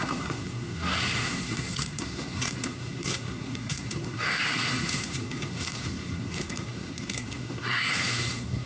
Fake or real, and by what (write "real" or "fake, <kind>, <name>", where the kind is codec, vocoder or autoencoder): fake, codec, SNAC